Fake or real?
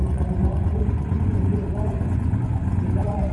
fake